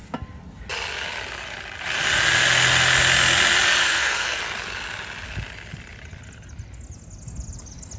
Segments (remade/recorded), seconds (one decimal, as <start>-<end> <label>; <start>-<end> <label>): 0.0-3.8 recorded; 3.8-4.4 remade; 4.4-8.0 recorded